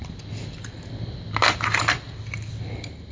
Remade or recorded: recorded